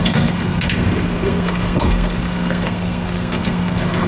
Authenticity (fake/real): fake